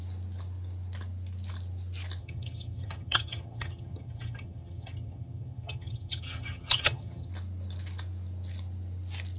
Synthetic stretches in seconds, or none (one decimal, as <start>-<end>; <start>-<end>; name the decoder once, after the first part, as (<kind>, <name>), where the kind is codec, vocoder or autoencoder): 2.2-7.3 (vocoder, HiFi-GAN)